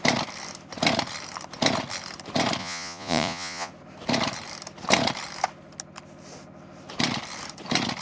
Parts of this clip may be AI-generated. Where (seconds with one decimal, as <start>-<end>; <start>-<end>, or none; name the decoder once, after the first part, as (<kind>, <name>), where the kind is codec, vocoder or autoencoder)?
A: 2.6-3.7 (vocoder, Vocos)